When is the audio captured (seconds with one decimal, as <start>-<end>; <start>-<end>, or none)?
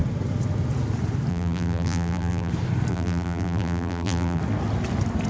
0.0-1.3; 2.5-2.9; 4.4-5.3